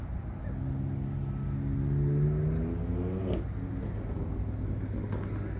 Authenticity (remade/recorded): recorded